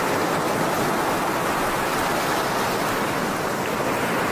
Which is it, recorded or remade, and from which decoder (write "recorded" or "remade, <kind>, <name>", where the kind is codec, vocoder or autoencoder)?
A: recorded